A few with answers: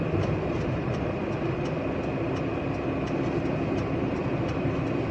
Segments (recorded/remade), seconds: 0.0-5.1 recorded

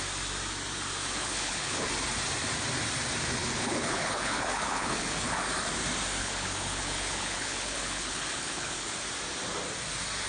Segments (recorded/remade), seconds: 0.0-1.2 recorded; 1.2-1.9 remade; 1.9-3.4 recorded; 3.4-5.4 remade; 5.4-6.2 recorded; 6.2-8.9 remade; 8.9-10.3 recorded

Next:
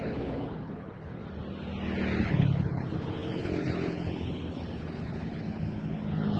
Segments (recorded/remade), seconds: 0.0-1.2 remade; 1.2-2.2 recorded; 2.2-6.4 remade